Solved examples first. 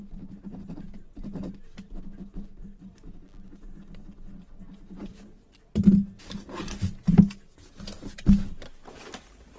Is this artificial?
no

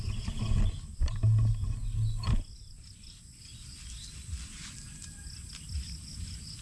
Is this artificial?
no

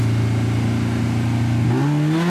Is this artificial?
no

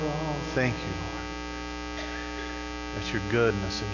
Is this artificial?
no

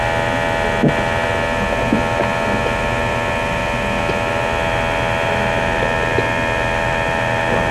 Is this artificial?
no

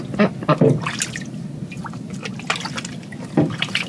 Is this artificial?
no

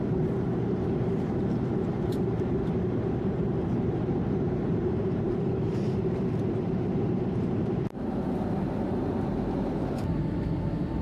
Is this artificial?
yes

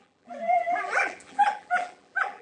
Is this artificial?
yes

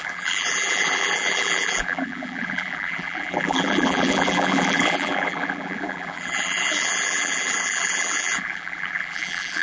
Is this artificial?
yes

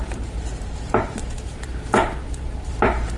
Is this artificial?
yes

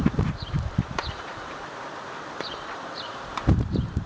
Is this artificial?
yes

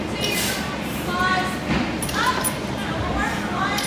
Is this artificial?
no